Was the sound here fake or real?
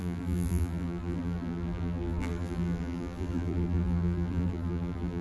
fake